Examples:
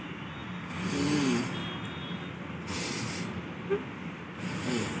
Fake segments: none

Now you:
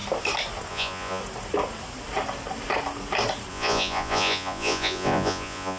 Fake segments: 0.7-1.2; 3.5-5.8

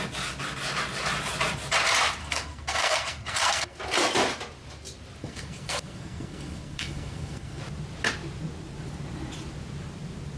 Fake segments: 2.2-3.8; 5.2-7.6

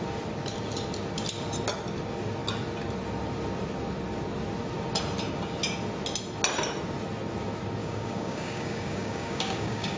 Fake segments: 7.8-10.0

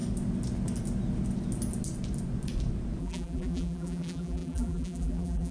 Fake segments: 3.0-5.5

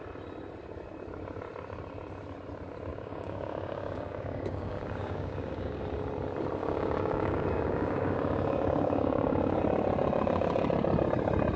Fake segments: 2.9-5.8; 6.6-9.6